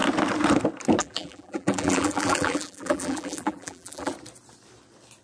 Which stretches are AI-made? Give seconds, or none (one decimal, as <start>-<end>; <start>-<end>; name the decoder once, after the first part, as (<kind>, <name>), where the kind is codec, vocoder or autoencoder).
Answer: 1.0-4.1 (vocoder, BigVGAN v2)